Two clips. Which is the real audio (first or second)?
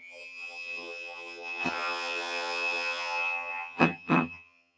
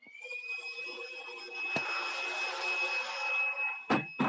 second